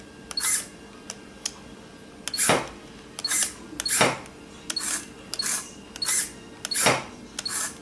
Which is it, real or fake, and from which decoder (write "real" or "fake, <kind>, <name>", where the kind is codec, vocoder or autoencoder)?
real